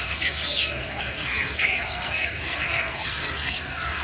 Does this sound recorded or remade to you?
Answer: remade